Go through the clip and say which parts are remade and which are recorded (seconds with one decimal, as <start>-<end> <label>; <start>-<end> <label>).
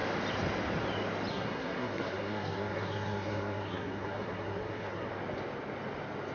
0.0-1.3 recorded; 1.3-5.1 remade; 5.1-6.3 recorded